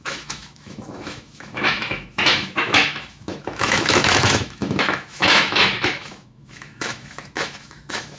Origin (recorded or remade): remade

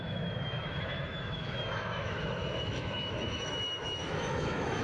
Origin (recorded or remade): remade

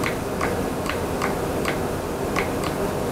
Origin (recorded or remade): recorded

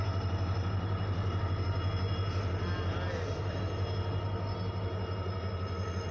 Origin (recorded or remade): recorded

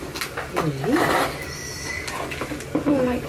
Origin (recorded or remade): recorded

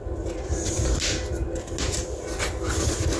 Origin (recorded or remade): recorded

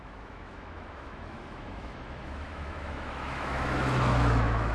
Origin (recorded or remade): remade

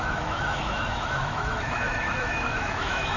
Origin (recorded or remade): remade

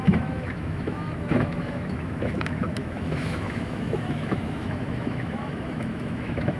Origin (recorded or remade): remade